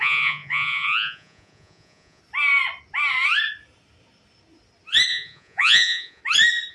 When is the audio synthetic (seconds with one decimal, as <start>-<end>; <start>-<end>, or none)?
0.0-2.2; 5.1-6.2